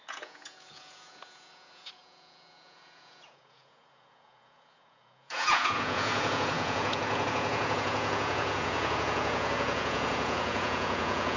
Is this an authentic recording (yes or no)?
no